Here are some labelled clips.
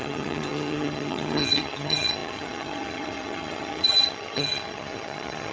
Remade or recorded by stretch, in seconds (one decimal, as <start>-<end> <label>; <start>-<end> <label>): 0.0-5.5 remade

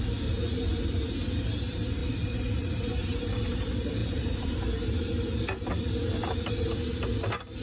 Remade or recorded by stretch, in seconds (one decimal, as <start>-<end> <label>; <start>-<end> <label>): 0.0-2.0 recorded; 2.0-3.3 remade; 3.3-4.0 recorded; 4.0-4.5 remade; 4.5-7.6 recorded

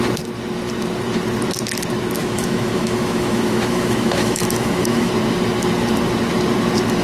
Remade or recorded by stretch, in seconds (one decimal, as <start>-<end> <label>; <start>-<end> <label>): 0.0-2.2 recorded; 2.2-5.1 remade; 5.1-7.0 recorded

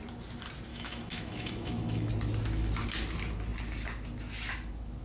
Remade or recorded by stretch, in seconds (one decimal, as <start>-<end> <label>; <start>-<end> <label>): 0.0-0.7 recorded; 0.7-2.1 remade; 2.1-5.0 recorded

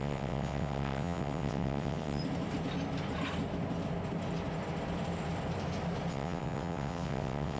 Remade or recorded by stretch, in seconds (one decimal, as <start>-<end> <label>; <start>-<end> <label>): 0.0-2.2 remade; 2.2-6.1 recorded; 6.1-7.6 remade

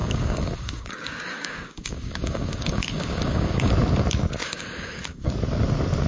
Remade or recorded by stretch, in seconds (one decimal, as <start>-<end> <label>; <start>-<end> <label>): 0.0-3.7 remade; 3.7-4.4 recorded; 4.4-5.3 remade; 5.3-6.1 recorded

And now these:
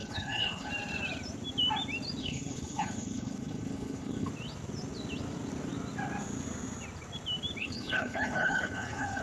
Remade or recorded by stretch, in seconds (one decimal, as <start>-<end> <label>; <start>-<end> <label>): 0.0-0.7 remade; 0.7-2.2 recorded; 2.2-4.3 remade; 4.3-7.6 recorded; 7.6-9.2 remade